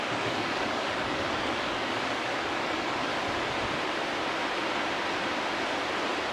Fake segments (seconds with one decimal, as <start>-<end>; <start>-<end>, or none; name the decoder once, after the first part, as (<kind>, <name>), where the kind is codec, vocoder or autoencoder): 0.0-3.1 (codec, DAC)